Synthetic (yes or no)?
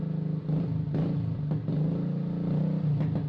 no